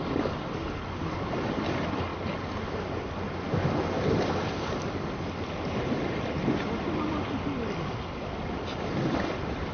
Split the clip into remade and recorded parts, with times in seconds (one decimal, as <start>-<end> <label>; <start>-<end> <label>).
0.0-9.7 recorded